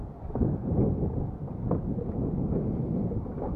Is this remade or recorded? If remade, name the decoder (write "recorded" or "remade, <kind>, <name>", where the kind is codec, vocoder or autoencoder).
recorded